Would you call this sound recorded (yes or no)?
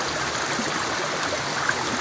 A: yes